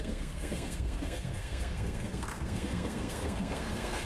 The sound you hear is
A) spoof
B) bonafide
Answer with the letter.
A